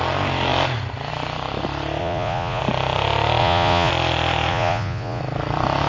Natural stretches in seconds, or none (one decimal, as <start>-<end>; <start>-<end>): 0.0-2.0; 2.6-3.4; 3.9-4.5; 5.2-5.9